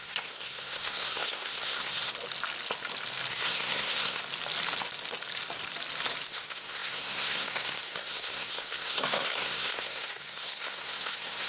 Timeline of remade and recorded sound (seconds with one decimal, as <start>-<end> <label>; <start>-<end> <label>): 0.0-2.1 remade; 2.1-3.3 recorded; 3.3-4.2 remade; 4.2-6.3 recorded; 6.3-11.5 remade